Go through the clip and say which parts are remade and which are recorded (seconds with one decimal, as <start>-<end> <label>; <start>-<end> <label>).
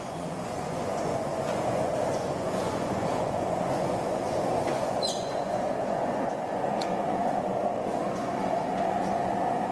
0.0-9.7 remade